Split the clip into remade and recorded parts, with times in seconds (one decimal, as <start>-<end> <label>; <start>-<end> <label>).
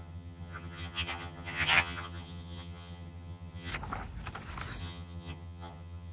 0.0-3.7 remade; 3.7-4.8 recorded; 4.8-6.1 remade